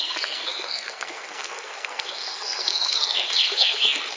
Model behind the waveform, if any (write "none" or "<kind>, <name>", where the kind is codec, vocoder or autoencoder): codec, SNAC